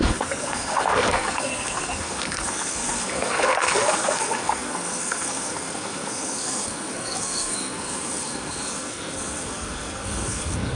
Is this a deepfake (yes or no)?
yes